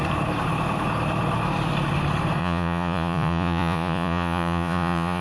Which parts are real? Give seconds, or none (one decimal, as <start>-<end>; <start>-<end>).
0.0-2.4